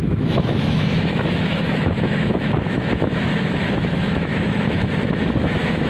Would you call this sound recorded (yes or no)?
no